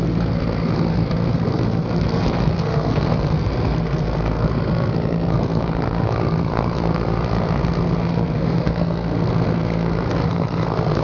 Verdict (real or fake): fake